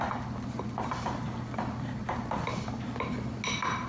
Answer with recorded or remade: recorded